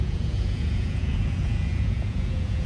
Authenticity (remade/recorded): remade